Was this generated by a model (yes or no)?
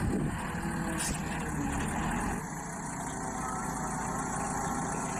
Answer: no